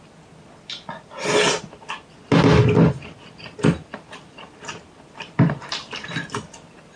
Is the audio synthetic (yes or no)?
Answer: no